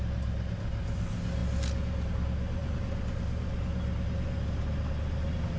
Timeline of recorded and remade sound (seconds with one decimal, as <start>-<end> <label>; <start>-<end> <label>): 0.0-5.6 recorded